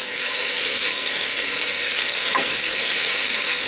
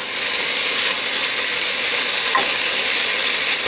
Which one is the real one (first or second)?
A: second